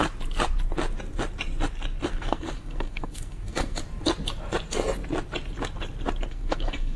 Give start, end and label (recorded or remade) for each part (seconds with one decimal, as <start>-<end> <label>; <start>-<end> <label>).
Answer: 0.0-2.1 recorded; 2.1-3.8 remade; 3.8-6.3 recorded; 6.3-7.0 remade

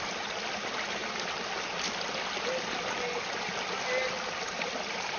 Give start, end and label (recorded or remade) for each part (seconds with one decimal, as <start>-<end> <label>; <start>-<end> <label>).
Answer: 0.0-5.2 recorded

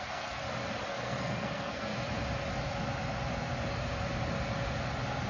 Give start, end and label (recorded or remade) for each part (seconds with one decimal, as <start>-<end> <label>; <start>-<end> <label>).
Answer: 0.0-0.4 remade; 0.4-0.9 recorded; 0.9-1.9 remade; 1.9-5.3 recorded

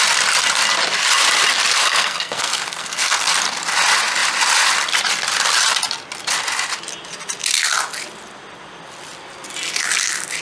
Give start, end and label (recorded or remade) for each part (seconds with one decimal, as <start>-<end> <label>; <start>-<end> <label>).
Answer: 0.0-1.7 recorded; 1.7-3.3 remade; 3.3-10.4 recorded

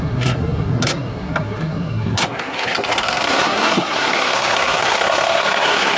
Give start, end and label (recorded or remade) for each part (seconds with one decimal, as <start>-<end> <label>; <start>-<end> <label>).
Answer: 0.0-6.0 remade